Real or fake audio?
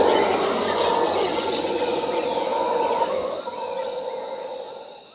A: fake